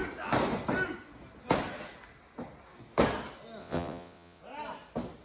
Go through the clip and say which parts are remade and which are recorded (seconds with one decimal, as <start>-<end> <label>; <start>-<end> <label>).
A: 0.0-3.6 recorded; 3.6-4.4 remade; 4.4-5.2 recorded